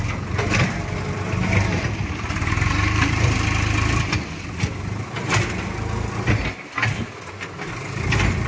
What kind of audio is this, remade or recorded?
recorded